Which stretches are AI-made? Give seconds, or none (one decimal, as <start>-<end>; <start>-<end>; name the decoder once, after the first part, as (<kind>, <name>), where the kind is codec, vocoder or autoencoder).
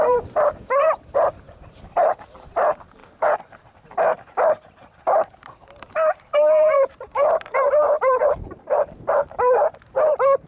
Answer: 0.0-10.5 (vocoder, BigVGAN v2)